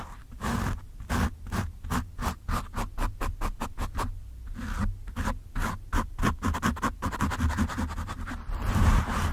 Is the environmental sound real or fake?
real